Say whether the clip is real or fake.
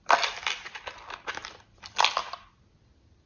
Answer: real